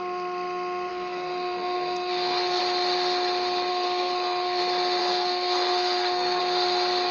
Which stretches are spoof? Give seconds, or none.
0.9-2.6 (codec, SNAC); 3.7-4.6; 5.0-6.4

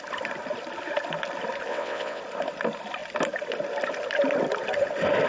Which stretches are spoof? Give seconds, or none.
1.7-2.2 (vocoder, WaveNeXt)

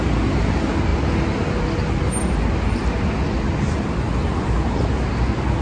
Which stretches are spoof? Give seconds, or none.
none